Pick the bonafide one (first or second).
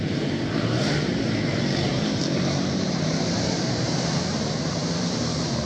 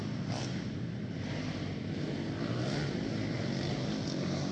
second